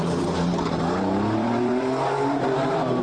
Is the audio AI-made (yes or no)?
yes